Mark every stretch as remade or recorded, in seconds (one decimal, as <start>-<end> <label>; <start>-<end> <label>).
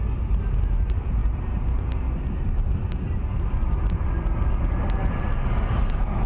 0.0-6.3 recorded